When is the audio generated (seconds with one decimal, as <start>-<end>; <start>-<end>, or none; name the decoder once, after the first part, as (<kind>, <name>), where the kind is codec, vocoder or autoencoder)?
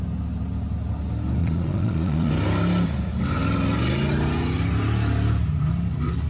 1.4-2.3 (vocoder, Vocos)